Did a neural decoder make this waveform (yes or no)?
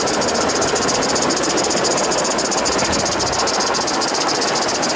no